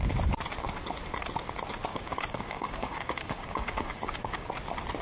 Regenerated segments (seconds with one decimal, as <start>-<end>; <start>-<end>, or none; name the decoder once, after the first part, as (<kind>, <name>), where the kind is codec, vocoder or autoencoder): 1.9-4.5 (codec, DAC)